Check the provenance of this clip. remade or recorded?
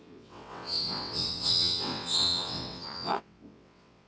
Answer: remade